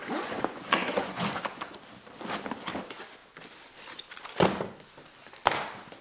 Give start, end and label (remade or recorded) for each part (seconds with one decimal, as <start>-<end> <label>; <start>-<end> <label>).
0.0-1.8 remade; 1.8-6.0 recorded